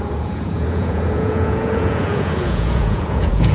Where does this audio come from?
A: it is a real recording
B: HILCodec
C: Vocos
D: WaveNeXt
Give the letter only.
C